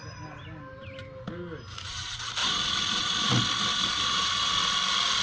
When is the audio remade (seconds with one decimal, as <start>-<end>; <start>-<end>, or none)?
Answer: 2.4-3.3; 3.7-4.5